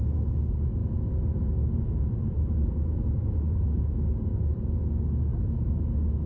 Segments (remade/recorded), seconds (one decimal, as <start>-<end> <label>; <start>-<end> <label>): 0.0-0.8 recorded; 0.8-3.8 remade; 3.8-4.3 recorded; 4.3-4.8 remade; 4.8-6.3 recorded